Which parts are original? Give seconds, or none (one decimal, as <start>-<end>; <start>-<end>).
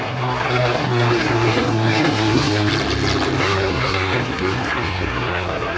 2.7-3.4